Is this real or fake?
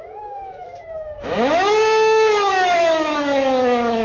fake